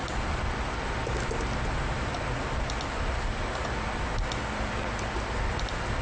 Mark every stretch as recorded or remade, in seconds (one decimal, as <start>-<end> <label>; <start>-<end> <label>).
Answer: 0.0-6.0 recorded